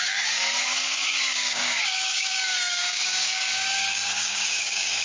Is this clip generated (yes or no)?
yes